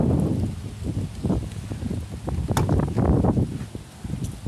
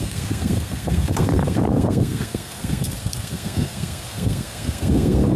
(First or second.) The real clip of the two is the first